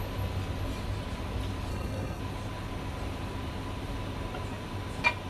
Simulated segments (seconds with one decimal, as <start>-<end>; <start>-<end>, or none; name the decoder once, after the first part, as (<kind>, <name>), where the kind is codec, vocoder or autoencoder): 1.7-2.2 (codec, SNAC)